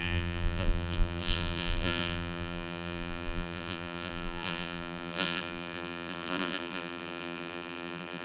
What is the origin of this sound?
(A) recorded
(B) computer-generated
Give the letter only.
B